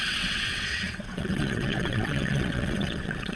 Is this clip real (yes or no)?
no